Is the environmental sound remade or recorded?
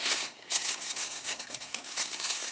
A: remade